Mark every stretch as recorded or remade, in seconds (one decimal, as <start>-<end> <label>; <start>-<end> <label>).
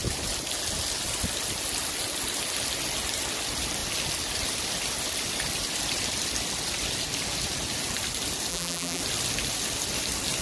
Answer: 0.0-8.5 recorded; 8.5-9.0 remade; 9.0-10.4 recorded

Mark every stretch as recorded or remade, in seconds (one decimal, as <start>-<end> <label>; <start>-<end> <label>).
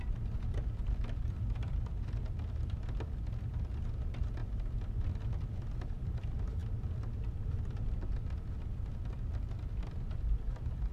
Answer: 0.0-1.9 remade; 1.9-3.4 recorded; 3.4-4.4 remade; 4.4-5.8 recorded; 5.8-6.6 remade; 6.6-9.3 recorded; 9.3-10.9 remade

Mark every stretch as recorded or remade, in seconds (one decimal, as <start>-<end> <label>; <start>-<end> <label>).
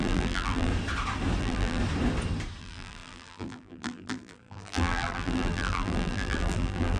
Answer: 0.0-0.7 remade; 0.7-1.4 recorded; 1.4-1.8 remade; 1.8-2.6 recorded; 2.6-7.0 remade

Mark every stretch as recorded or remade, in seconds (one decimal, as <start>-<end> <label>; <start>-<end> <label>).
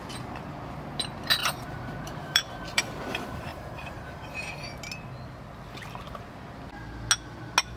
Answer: 0.0-1.4 recorded; 1.4-2.8 remade; 2.8-3.5 recorded; 3.5-4.6 remade; 4.6-7.8 recorded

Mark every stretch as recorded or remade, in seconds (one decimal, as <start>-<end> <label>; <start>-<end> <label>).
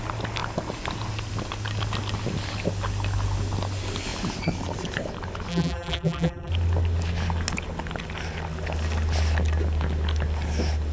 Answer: 0.0-5.5 recorded; 5.5-6.5 remade; 6.5-10.9 recorded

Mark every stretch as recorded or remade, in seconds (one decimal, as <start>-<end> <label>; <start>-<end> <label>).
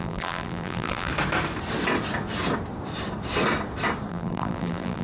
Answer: 0.0-1.1 remade; 1.1-4.1 recorded; 4.1-5.0 remade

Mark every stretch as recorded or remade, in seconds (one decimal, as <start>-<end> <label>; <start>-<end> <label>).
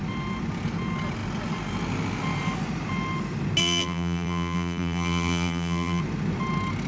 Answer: 0.0-3.6 recorded; 3.6-6.0 remade; 6.0-6.9 recorded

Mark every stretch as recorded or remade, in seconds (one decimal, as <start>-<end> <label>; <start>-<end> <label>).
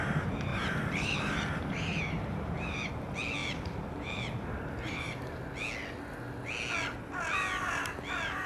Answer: 0.0-0.5 recorded; 0.5-2.9 remade; 2.9-3.4 recorded; 3.4-5.4 remade; 5.4-8.5 recorded